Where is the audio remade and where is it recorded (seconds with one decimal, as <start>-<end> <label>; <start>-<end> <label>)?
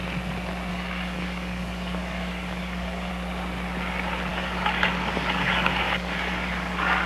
0.0-0.7 recorded; 0.7-3.1 remade; 3.1-4.3 recorded; 4.3-7.1 remade